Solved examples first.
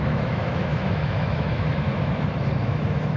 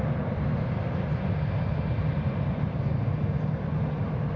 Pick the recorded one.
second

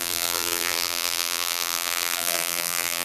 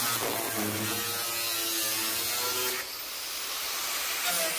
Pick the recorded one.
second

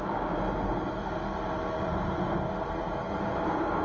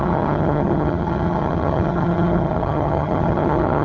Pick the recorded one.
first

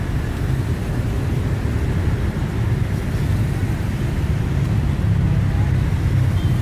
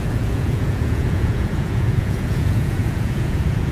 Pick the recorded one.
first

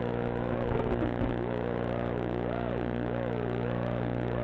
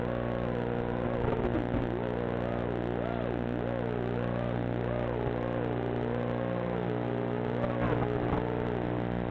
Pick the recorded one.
second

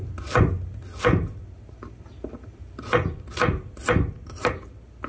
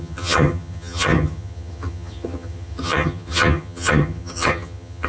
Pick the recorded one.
first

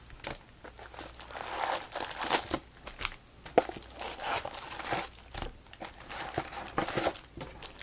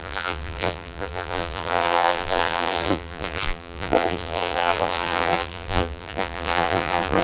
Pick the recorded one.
first